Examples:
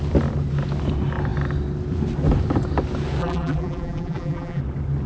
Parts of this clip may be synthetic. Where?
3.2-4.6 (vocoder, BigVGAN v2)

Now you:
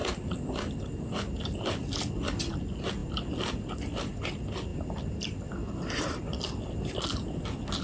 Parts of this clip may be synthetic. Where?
none